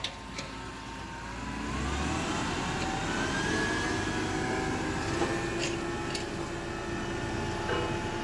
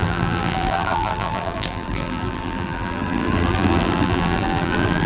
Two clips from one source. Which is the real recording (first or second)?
first